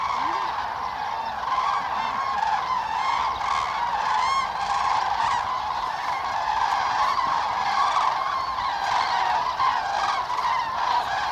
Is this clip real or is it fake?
real